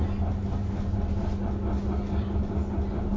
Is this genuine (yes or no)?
yes